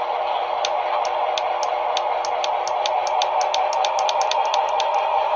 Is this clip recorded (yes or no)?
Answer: yes